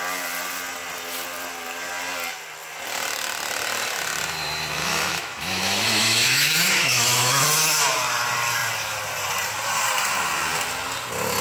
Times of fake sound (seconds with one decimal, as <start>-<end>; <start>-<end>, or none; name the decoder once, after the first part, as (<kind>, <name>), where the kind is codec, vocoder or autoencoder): 4.8-7.5 (autoencoder, DAC-VAE)